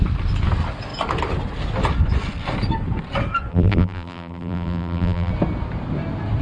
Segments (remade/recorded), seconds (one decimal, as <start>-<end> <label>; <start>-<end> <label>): 0.0-3.5 recorded; 3.5-5.3 remade; 5.3-6.4 recorded